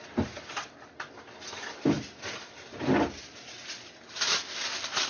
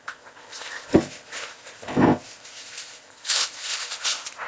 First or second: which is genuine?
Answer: first